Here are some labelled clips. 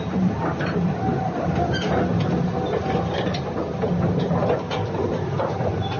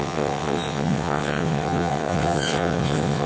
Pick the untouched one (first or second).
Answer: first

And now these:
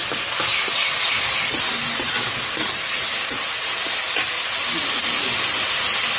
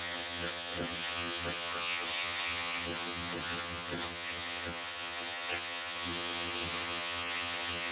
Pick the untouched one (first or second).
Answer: first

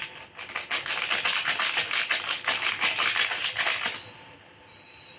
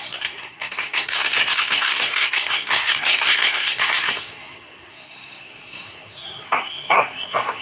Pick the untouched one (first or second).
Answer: first